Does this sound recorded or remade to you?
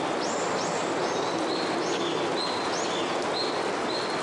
recorded